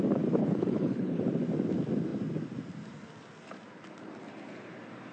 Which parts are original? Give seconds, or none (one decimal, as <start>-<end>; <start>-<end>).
0.0-0.4; 1.2-5.1